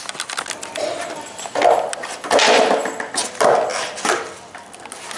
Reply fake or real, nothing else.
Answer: real